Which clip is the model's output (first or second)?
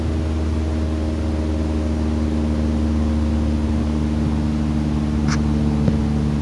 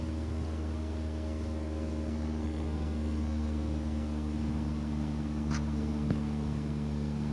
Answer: second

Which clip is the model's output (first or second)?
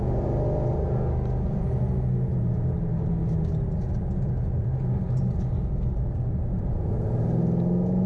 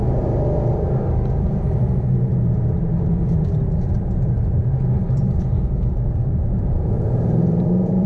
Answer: second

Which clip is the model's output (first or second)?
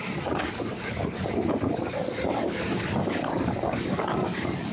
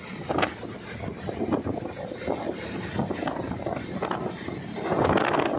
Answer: first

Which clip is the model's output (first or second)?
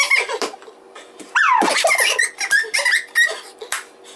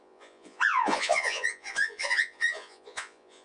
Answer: second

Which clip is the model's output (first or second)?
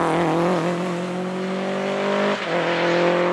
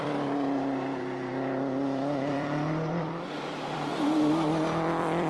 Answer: second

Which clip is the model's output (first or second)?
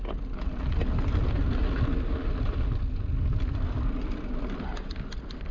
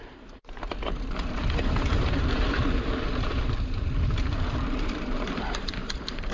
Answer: second